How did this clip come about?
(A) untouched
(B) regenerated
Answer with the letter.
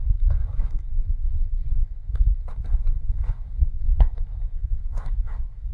B